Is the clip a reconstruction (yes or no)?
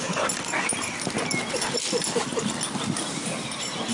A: no